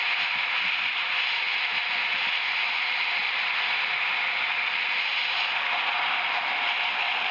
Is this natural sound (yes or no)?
yes